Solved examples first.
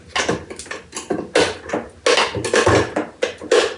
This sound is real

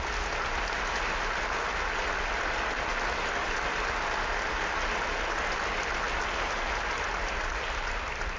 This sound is real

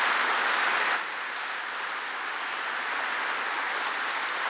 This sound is real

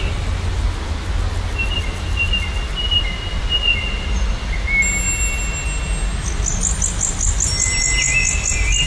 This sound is real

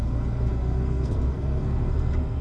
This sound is fake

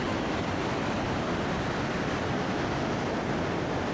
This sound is real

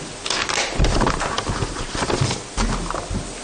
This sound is real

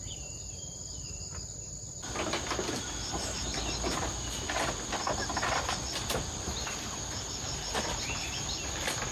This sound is real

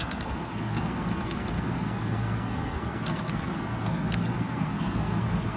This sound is fake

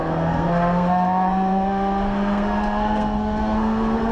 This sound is fake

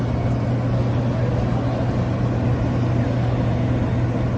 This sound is real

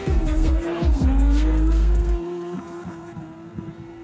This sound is fake